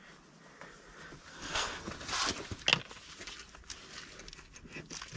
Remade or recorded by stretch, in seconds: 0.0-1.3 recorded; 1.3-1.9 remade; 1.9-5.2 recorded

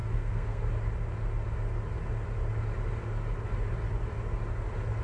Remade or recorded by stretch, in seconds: 0.0-0.7 remade; 0.7-5.0 recorded

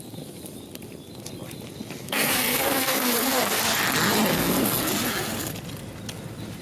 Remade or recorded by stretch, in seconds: 0.0-2.0 recorded; 2.0-3.6 remade; 3.6-4.3 recorded; 4.3-4.9 remade; 4.9-6.6 recorded

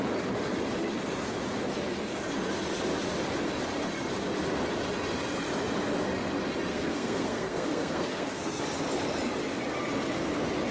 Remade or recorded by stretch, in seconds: 0.0-6.7 recorded; 6.7-8.6 remade; 8.6-10.7 recorded

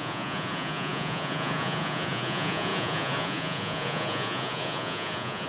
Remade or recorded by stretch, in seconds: 0.0-5.5 remade

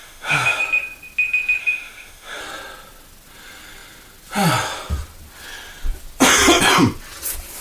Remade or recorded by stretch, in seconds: 0.0-0.6 remade; 0.6-1.6 recorded; 1.6-2.4 remade; 2.4-7.6 recorded

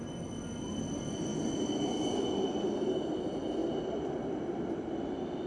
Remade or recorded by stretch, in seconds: 0.0-5.5 recorded

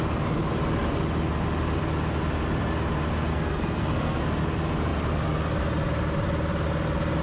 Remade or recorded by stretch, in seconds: 0.0-3.3 recorded; 3.3-4.2 remade; 4.2-7.2 recorded